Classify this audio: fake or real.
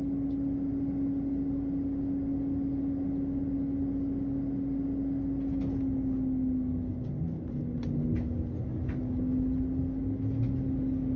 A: real